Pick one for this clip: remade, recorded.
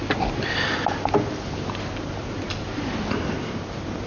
recorded